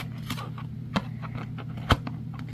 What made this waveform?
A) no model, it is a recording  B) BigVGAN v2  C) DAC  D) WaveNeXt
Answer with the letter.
A